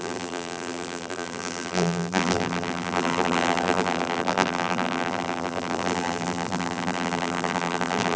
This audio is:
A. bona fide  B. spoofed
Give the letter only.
B